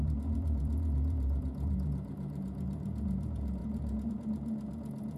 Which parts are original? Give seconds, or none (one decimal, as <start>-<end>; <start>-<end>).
none